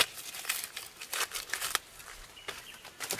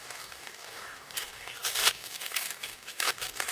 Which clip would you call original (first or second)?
first